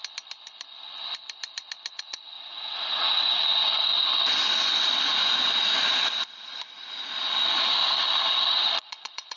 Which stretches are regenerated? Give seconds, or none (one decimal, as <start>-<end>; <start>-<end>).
1.9-3.3; 8.5-9.4